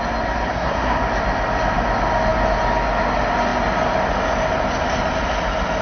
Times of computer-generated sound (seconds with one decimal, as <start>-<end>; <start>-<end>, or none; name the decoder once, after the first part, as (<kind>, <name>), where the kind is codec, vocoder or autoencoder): 0.5-1.0 (codec, SNAC)